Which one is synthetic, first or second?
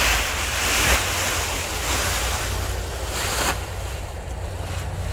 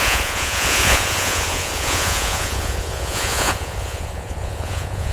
second